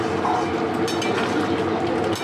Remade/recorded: recorded